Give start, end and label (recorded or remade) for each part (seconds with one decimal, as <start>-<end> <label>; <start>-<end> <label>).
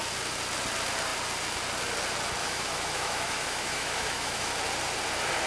0.0-2.4 recorded; 2.4-4.5 remade; 4.5-5.5 recorded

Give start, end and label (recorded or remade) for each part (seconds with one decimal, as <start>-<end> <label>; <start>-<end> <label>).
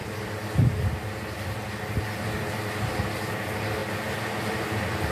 0.0-5.1 recorded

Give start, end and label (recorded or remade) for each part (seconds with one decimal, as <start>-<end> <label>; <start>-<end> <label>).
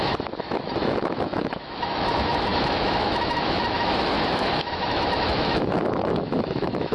0.0-6.9 remade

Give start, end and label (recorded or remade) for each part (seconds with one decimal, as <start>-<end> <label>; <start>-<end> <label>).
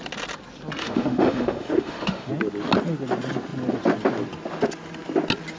0.0-0.8 recorded; 0.8-2.3 remade; 2.3-5.6 recorded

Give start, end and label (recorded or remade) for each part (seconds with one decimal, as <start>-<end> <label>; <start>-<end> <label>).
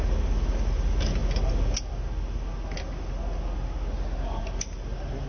0.0-5.3 recorded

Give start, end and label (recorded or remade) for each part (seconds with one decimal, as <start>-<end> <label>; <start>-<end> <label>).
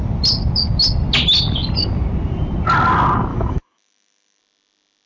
0.0-3.3 recorded; 3.3-4.4 remade; 4.4-5.1 recorded